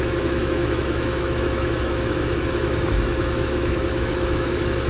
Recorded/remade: remade